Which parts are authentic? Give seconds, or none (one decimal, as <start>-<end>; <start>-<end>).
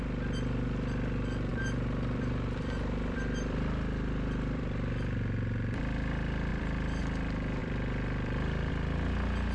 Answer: 0.0-1.5; 5.8-6.5; 7.0-7.6; 8.7-9.5